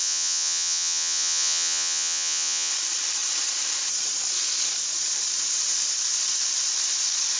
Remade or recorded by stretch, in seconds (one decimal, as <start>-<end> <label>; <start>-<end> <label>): 0.0-2.7 remade; 2.7-7.4 recorded